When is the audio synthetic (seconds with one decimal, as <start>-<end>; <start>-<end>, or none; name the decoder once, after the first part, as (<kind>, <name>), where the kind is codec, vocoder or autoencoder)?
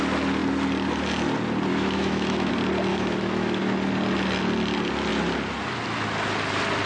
1.7-2.5 (autoencoder, DAC-VAE); 2.9-3.6